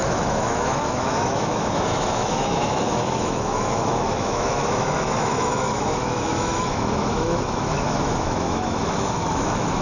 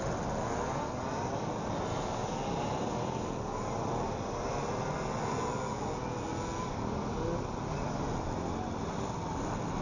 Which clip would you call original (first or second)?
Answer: second